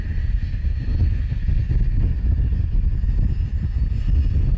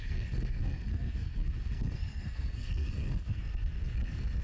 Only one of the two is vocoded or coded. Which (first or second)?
second